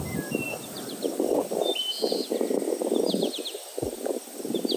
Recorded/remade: recorded